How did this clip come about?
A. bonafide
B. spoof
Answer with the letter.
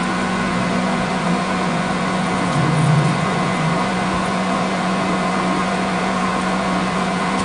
B